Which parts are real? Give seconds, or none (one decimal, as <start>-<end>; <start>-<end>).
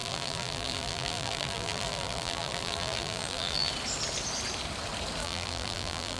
3.7-5.2